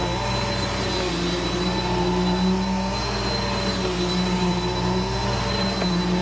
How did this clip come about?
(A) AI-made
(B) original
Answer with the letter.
B